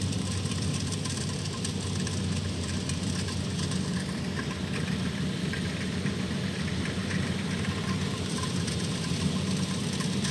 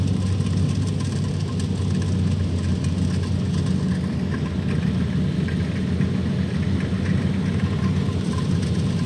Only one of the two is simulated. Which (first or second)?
first